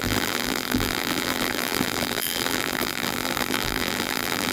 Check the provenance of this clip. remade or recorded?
remade